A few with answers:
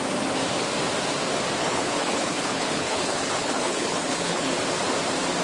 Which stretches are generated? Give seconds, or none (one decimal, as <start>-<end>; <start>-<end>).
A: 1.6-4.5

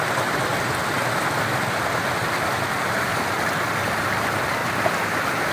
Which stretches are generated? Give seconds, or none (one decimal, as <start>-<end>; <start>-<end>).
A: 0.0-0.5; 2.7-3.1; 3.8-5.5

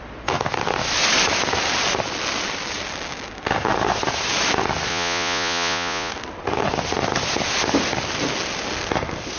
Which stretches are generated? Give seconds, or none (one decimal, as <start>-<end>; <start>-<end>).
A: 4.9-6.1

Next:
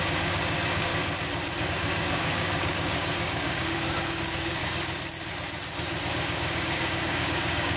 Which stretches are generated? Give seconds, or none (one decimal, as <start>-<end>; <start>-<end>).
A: 0.0-0.9; 1.7-4.6; 6.1-7.8